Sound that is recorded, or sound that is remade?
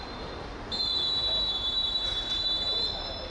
recorded